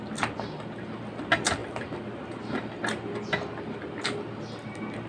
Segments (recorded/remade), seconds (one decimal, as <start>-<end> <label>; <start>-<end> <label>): 0.0-5.1 recorded